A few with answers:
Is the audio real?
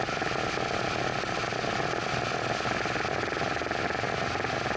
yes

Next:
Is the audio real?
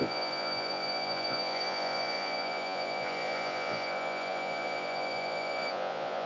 no